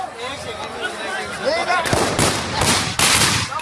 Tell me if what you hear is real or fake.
real